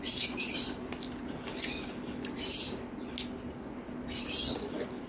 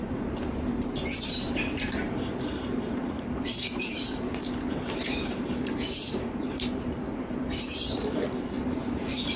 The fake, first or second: second